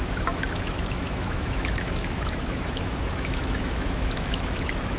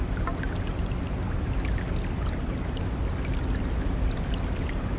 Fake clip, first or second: first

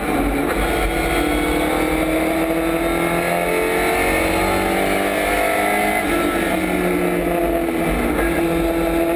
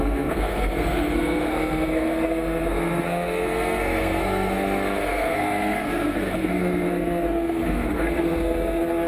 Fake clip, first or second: second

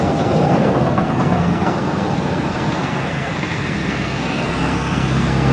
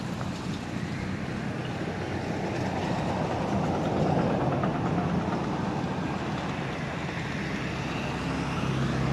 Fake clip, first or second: first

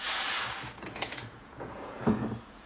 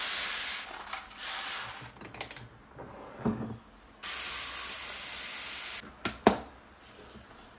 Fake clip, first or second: first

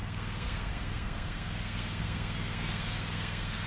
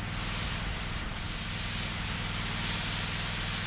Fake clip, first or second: first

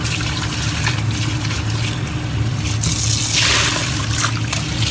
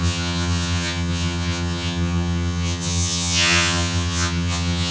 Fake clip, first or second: second